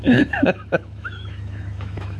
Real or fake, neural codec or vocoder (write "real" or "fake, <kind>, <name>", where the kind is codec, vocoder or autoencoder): fake, autoencoder, DAC-VAE